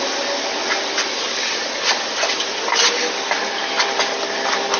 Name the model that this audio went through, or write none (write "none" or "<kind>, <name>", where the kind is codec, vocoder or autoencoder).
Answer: none